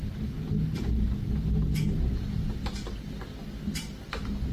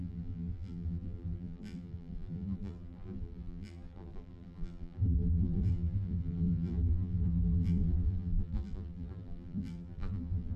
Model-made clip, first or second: second